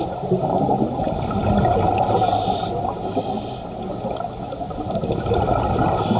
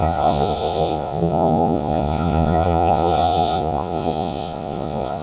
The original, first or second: first